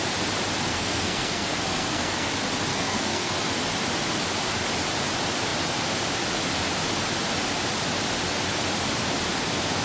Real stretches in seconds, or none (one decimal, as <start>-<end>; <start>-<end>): 0.0-0.7; 2.3-2.7; 3.3-9.8